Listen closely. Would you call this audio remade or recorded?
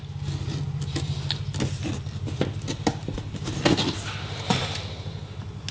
recorded